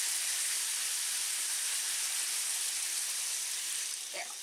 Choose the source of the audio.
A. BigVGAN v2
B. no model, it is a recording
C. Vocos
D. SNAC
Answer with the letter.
A